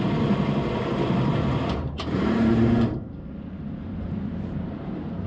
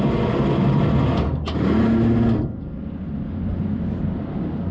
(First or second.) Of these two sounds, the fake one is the first